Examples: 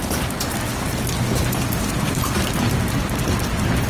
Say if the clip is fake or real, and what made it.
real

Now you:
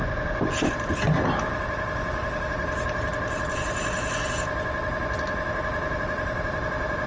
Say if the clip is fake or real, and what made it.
fake, vocoder, BigVGAN v2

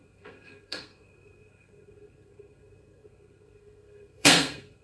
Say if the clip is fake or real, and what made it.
fake, codec, SNAC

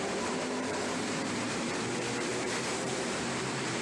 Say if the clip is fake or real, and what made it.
fake, vocoder, BigVGAN v2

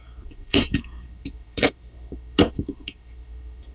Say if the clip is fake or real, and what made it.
fake, autoencoder, DAC-VAE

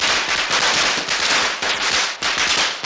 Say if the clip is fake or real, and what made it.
real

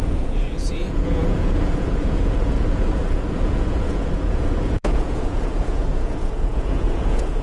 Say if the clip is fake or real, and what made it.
fake, vocoder, Vocos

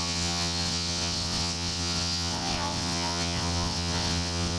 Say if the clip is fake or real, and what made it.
fake, vocoder, WaveNeXt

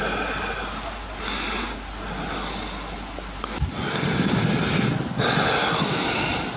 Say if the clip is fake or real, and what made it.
real